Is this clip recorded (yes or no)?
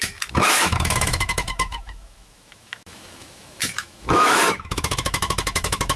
no